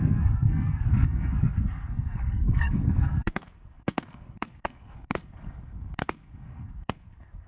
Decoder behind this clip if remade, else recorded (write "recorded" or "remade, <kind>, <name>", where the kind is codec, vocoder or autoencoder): remade, codec, SNAC